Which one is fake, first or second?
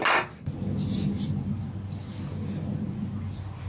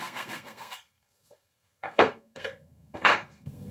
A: second